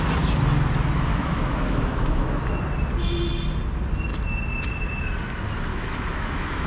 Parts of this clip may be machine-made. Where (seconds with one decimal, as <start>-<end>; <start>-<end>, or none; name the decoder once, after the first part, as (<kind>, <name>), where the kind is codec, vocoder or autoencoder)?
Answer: 1.1-2.6 (autoencoder, DAC-VAE); 5.7-6.7